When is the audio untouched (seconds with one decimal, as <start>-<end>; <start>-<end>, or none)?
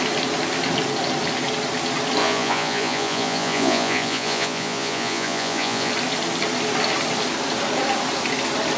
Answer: 0.0-2.2; 5.9-8.8